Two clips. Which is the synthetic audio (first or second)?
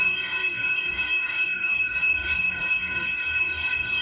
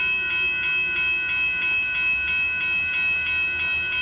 first